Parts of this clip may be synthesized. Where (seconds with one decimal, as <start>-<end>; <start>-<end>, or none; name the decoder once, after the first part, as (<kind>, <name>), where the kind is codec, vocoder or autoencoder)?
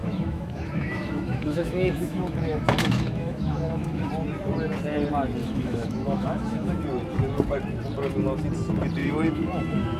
0.0-4.1 (autoencoder, DAC-VAE); 5.4-6.8; 9.0-10.0